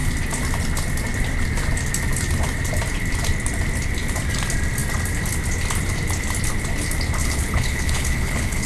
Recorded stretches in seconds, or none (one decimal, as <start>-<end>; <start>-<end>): 0.0-7.2